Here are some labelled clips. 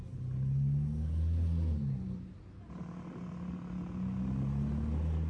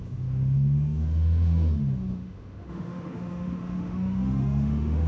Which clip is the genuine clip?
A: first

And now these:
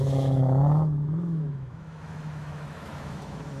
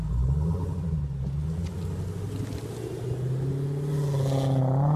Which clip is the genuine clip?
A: second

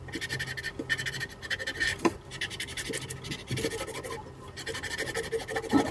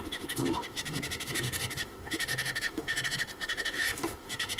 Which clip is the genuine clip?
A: first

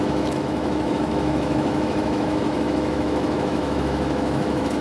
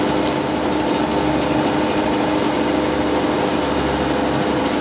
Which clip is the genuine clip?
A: second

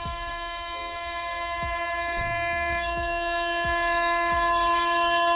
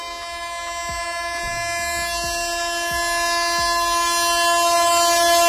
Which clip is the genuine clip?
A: second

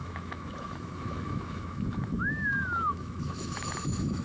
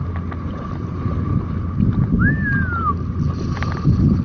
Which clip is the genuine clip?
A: second